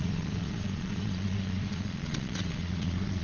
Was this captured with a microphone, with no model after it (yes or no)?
no